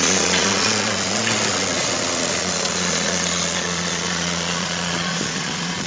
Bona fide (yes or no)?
no